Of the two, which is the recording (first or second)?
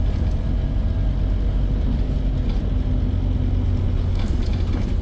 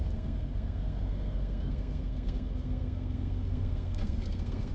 first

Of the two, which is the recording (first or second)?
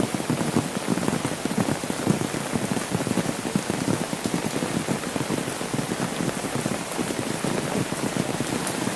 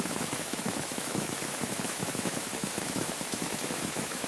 first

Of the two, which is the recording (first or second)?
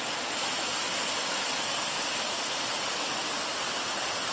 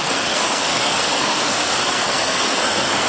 first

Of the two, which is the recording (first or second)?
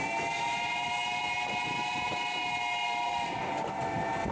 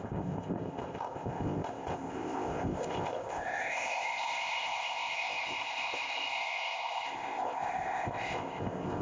first